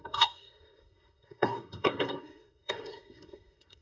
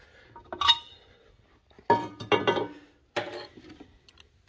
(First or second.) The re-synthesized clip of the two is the first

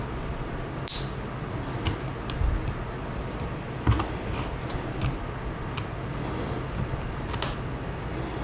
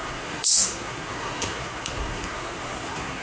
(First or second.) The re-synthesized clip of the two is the second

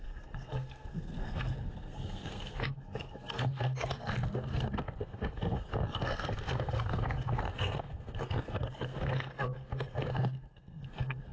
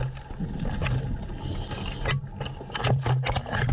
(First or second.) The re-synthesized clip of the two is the first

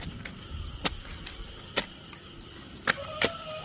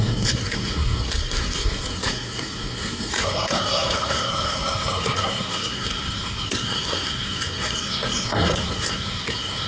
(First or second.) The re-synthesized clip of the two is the second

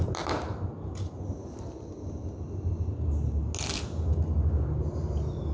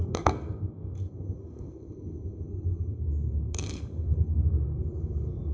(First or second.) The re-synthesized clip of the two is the second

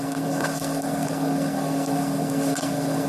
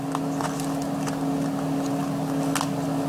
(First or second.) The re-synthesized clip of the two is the first